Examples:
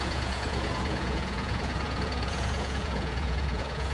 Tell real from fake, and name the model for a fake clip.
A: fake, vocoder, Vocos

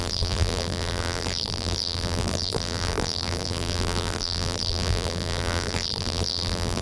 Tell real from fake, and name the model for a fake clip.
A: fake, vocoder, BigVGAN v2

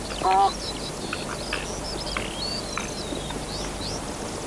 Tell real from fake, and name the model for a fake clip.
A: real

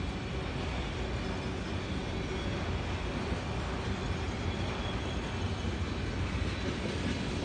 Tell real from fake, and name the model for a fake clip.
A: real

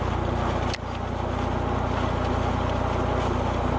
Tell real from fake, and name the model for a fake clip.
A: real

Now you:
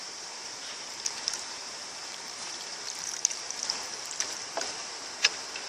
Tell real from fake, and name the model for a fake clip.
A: fake, vocoder, BigVGAN v2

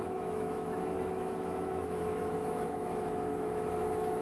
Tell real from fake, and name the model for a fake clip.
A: fake, autoencoder, DAC-VAE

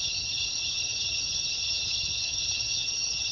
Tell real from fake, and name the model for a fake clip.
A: fake, vocoder, HiFi-GAN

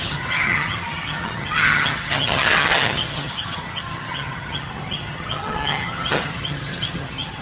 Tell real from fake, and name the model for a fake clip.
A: fake, vocoder, HiFi-GAN